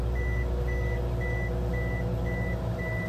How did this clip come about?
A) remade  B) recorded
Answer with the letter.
B